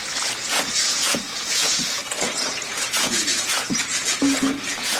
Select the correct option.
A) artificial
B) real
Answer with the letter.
A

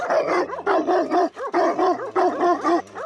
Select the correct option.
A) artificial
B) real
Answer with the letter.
B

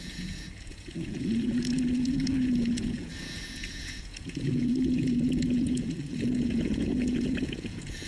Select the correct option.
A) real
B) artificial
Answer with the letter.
B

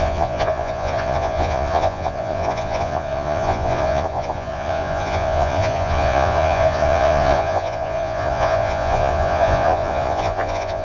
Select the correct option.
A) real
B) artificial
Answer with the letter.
B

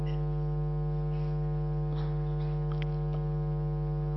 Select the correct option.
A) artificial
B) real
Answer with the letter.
B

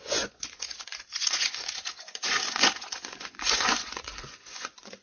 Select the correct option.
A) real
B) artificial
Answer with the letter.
B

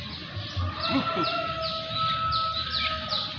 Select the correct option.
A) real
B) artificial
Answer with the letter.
A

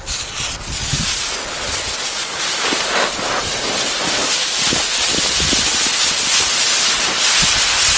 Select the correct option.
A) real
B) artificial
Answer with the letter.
A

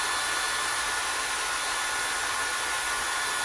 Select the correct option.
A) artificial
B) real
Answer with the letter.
B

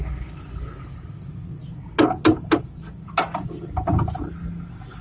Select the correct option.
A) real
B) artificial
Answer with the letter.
A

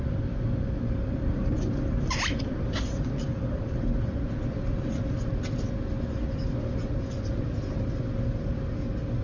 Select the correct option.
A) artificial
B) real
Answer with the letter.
B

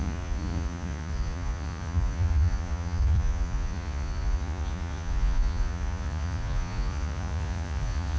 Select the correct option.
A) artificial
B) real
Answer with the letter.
A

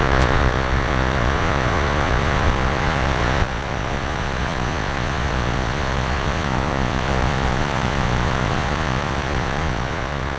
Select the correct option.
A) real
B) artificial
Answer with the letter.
B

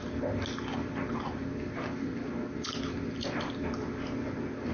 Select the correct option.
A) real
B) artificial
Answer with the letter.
A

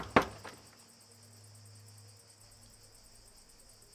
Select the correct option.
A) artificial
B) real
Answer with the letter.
B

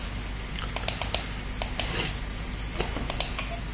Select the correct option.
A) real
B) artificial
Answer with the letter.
A